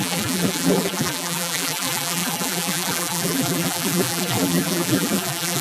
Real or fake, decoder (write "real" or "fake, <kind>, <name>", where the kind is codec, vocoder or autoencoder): fake, vocoder, BigVGAN v2